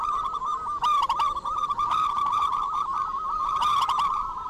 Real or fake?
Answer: fake